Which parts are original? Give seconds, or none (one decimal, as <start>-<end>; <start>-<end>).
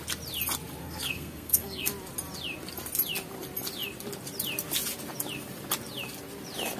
0.0-0.8; 1.9-6.8